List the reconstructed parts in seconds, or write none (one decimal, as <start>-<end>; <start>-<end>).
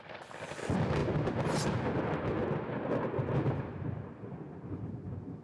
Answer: none